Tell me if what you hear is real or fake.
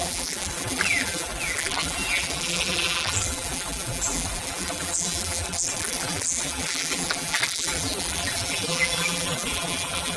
fake